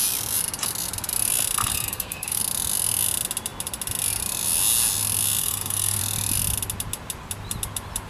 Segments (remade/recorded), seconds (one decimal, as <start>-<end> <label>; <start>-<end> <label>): 0.0-1.7 recorded; 1.7-2.4 remade; 2.4-5.4 recorded; 5.4-6.0 remade; 6.0-8.1 recorded

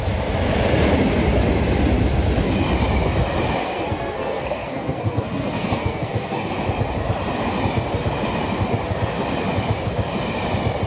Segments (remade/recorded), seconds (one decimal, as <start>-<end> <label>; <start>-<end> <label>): 0.0-3.6 recorded; 3.6-6.5 remade; 6.5-10.9 recorded

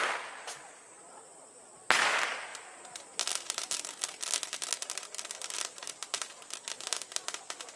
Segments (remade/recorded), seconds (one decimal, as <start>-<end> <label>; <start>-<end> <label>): 0.0-7.8 recorded

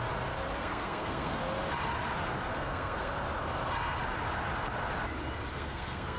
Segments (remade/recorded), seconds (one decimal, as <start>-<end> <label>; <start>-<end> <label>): 0.0-0.6 recorded; 0.6-1.4 remade; 1.4-2.5 recorded; 2.5-3.1 remade; 3.1-5.5 recorded; 5.5-6.2 remade

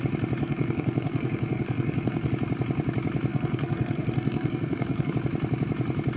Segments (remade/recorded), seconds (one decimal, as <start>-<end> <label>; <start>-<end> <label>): 0.0-0.4 recorded; 0.4-2.3 remade; 2.3-3.3 recorded; 3.3-5.1 remade; 5.1-6.2 recorded